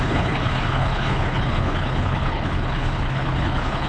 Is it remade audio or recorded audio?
remade